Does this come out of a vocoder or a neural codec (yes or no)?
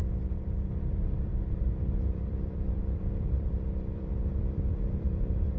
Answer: yes